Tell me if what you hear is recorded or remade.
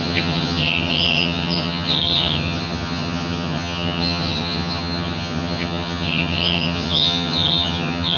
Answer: remade